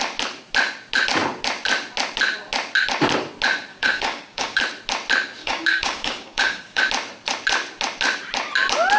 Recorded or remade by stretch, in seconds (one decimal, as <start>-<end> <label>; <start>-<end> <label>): 0.0-3.7 recorded; 3.7-4.6 remade; 4.6-5.4 recorded; 5.4-6.8 remade; 6.8-9.0 recorded